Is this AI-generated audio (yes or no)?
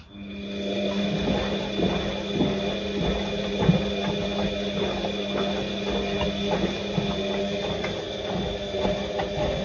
no